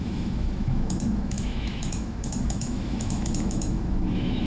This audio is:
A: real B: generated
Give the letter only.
B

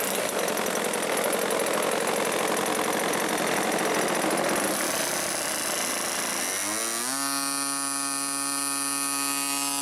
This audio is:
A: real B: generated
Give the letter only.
A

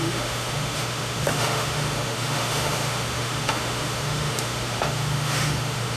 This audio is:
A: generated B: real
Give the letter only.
A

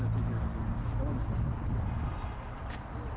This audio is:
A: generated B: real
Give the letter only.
B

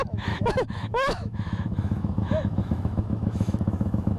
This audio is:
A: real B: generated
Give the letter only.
B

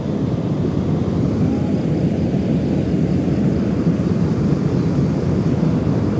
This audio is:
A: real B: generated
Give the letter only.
A